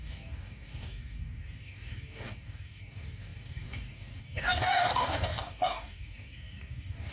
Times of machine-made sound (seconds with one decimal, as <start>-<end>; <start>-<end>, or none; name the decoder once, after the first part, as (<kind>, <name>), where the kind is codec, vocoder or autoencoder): 0.0-7.1 (codec, DAC)